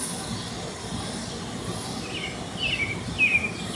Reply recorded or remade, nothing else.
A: recorded